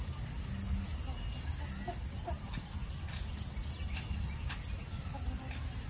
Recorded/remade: recorded